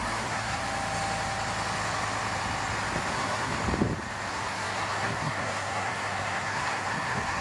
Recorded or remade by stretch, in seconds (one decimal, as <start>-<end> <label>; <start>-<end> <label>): 0.0-0.6 remade; 0.6-3.1 recorded; 3.1-3.5 remade; 3.5-4.3 recorded; 4.3-7.4 remade